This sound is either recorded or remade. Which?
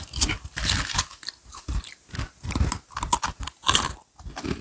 recorded